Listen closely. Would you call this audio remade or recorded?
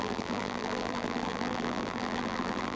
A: remade